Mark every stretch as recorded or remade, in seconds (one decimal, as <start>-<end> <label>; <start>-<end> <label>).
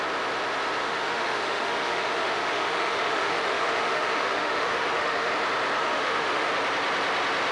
0.0-0.8 recorded; 0.8-5.3 remade; 5.3-5.8 recorded; 5.8-6.5 remade; 6.5-7.5 recorded